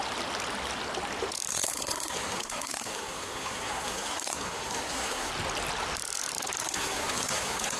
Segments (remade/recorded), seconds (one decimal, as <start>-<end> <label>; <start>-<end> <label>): 0.0-1.5 recorded; 1.5-5.3 remade; 5.3-6.6 recorded; 6.6-7.8 remade